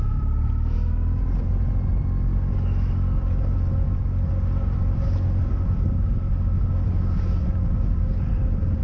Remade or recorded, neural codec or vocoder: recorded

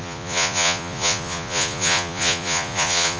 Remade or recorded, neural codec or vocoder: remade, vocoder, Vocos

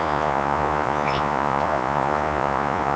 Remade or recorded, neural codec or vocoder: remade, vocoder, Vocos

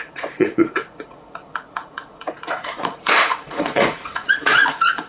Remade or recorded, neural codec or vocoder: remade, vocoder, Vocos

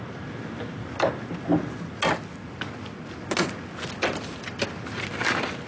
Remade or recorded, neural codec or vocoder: recorded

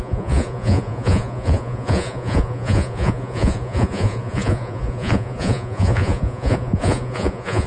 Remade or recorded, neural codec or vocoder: remade, vocoder, Vocos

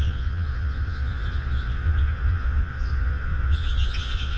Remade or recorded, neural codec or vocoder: remade, vocoder, Vocos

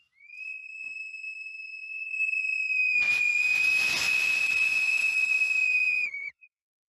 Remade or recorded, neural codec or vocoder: remade, vocoder, Vocos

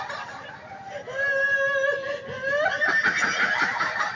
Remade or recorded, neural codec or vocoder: recorded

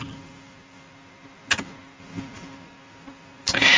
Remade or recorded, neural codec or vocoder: recorded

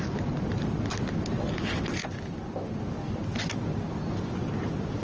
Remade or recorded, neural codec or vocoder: recorded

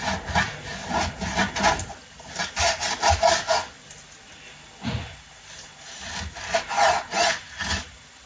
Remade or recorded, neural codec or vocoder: recorded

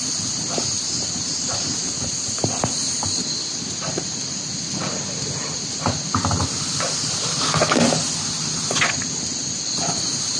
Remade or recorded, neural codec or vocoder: recorded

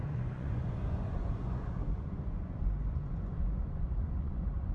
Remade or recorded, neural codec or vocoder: remade, vocoder, Vocos